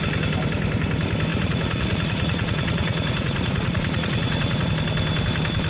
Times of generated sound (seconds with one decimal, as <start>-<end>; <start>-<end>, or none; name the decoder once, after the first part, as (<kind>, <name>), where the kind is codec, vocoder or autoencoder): 1.3-4.7 (vocoder, Vocos)

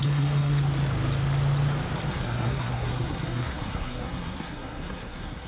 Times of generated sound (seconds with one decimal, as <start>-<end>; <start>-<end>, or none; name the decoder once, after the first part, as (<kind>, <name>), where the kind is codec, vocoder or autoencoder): 0.0-0.6 (codec, SNAC); 2.1-5.5

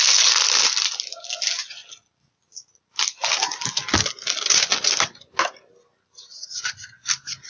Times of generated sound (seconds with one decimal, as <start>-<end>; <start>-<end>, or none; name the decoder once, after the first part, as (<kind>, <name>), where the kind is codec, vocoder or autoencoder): none

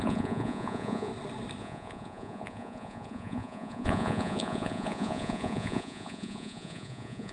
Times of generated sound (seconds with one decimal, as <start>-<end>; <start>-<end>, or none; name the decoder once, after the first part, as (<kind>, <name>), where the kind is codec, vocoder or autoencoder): 0.0-1.1 (vocoder, Vocos); 1.6-7.3

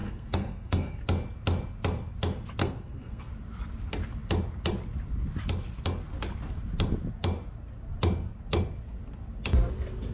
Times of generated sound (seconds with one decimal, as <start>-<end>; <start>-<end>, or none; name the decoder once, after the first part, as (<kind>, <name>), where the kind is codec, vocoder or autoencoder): 0.0-1.0 (codec, SNAC); 2.6-3.3

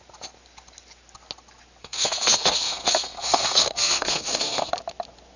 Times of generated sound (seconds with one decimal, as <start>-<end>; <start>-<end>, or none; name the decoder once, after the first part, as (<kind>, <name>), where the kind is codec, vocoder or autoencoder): 1.8-4.7 (codec, SNAC)

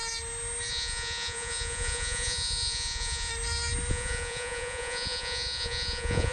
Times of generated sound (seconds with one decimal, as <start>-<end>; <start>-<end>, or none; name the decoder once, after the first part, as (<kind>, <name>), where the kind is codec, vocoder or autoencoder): 0.7-3.3 (vocoder, Vocos); 3.9-6.3